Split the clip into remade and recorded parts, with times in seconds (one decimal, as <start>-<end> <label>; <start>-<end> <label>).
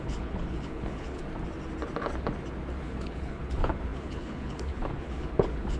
0.0-1.2 remade; 1.2-2.8 recorded; 2.8-5.8 remade